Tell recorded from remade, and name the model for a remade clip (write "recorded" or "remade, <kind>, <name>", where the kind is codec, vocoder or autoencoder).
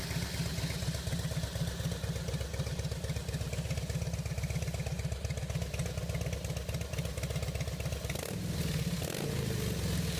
recorded